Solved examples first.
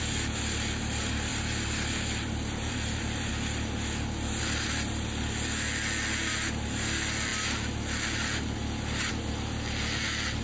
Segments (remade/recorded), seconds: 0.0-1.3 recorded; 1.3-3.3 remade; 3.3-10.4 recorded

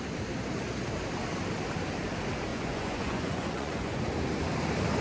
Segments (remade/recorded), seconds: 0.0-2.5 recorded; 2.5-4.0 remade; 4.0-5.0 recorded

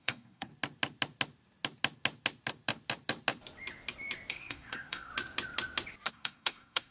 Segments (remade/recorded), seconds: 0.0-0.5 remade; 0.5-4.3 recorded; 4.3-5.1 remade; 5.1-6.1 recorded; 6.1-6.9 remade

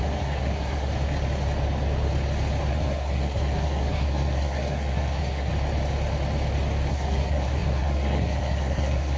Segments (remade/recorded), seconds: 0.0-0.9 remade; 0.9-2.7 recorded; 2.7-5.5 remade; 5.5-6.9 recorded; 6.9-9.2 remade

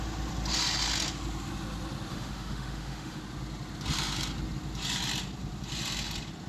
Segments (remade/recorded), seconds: 0.0-2.1 recorded; 2.1-3.2 remade; 3.2-6.5 recorded

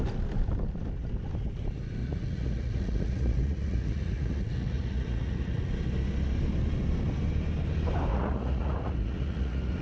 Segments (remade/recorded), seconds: 0.0-2.0 recorded; 2.0-5.7 remade; 5.7-8.1 recorded; 8.1-9.8 remade

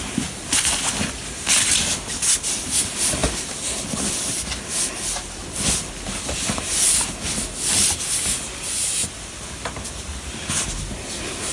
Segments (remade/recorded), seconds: 0.0-11.5 recorded